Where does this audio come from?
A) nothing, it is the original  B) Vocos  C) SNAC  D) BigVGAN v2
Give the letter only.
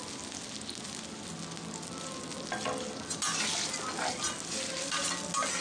A